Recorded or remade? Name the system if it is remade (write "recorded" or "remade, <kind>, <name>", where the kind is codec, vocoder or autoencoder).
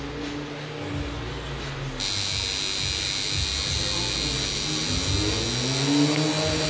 recorded